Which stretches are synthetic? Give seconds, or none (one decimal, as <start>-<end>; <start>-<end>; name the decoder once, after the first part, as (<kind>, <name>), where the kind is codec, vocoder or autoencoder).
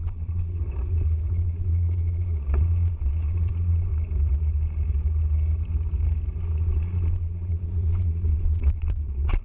0.0-0.6 (vocoder, Vocos); 1.3-3.9; 6.4-9.4